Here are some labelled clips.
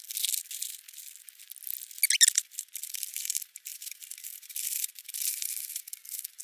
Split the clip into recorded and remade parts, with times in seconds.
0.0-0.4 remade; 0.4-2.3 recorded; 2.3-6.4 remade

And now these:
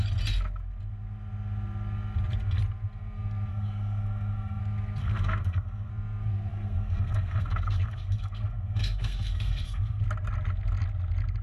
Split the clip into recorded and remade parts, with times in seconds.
0.0-3.5 recorded; 3.5-4.6 remade; 4.6-5.0 recorded; 5.0-5.9 remade; 5.9-6.5 recorded; 6.5-10.0 remade; 10.0-11.4 recorded

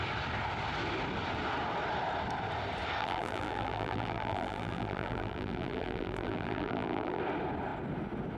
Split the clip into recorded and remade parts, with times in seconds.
0.0-3.0 recorded; 3.0-7.2 remade; 7.2-8.4 recorded

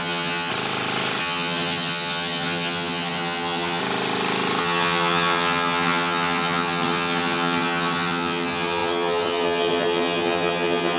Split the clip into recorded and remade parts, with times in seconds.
0.0-0.5 remade; 0.5-1.2 recorded; 1.2-3.8 remade; 3.8-4.6 recorded; 4.6-11.0 remade